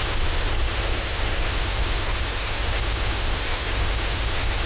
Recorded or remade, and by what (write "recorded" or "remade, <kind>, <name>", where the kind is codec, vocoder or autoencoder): remade, codec, SNAC